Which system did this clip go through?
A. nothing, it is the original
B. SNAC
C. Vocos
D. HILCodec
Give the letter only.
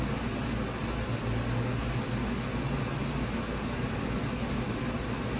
A